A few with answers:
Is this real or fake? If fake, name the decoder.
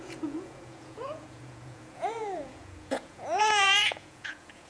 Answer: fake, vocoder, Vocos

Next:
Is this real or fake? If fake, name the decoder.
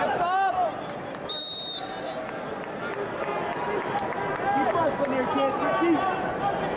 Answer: real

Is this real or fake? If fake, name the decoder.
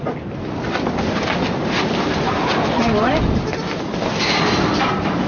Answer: real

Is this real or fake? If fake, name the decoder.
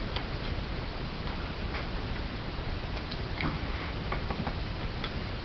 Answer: real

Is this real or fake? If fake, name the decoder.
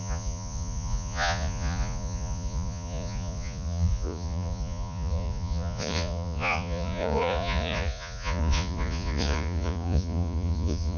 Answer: fake, vocoder, Vocos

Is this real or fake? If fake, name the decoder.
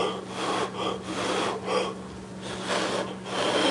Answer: real